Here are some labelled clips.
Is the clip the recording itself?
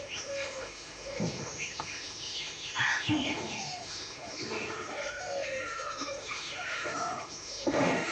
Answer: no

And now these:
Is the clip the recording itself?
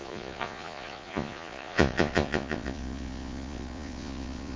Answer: no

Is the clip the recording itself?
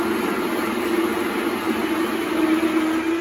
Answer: yes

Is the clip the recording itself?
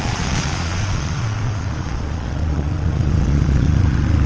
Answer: no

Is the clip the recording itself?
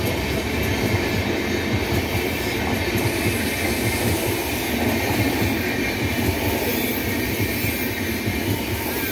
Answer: yes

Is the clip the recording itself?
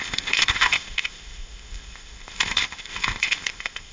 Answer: no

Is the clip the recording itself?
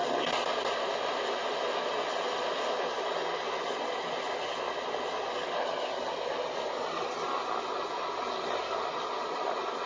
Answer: yes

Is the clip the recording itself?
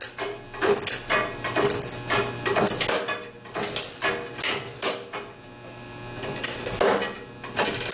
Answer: yes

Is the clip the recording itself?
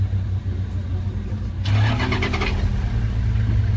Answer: yes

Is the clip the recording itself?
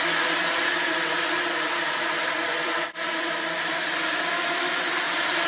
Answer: no